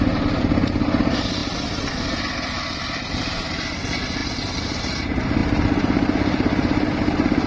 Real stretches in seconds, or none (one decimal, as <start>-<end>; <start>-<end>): 0.0-7.5

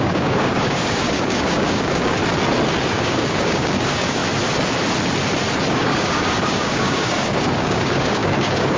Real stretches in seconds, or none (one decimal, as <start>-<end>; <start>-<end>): 2.2-2.9; 4.2-5.7

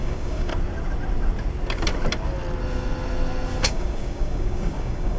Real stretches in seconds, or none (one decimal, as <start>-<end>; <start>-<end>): 0.5-3.6

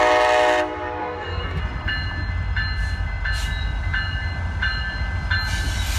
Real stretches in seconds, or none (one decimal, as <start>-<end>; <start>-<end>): 0.0-1.0; 1.6-6.0